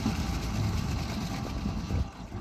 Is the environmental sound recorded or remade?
recorded